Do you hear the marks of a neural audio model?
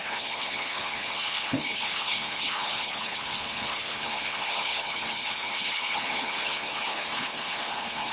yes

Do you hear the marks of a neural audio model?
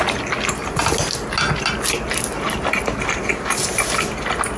no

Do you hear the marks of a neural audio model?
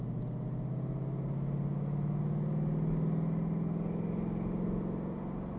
no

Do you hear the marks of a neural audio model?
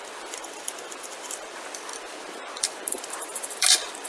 yes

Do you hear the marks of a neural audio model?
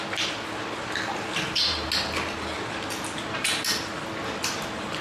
no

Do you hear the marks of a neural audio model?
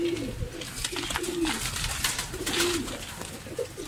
no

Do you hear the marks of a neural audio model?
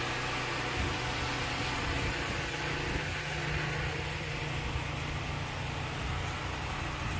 no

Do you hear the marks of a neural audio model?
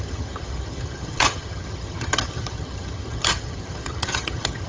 yes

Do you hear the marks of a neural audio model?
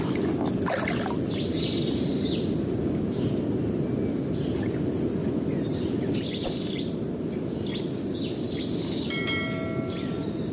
no